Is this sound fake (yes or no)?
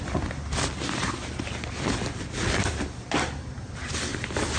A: no